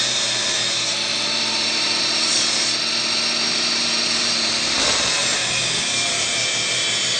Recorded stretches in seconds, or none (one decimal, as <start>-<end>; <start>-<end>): 2.3-3.5